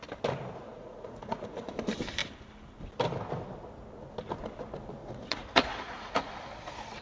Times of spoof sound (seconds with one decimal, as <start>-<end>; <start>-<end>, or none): 0.7-1.7; 5.0-6.3